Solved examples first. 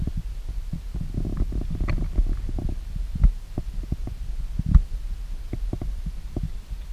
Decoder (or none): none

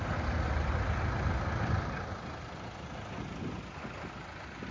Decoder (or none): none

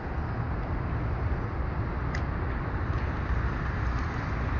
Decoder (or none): none